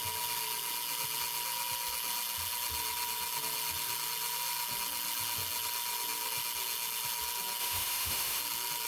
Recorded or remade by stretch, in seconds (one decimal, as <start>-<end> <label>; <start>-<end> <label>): 0.0-7.6 recorded; 7.6-8.4 remade; 8.4-8.9 recorded